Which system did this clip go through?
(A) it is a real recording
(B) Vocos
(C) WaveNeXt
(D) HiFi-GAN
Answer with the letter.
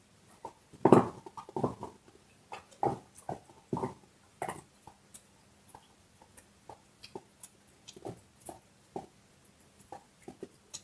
A